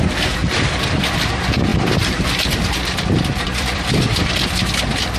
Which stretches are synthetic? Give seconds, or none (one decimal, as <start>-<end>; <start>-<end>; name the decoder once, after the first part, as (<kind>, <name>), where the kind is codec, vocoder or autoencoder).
0.4-1.0 (vocoder, BigVGAN v2); 1.7-4.8